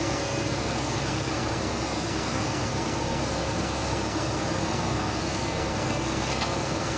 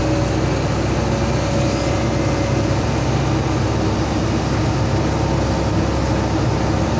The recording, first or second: second